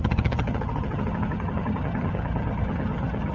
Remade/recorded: remade